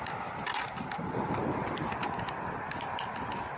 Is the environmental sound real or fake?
real